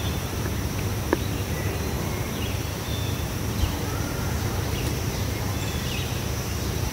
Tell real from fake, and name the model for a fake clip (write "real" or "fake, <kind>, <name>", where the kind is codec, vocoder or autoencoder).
fake, vocoder, BigVGAN v2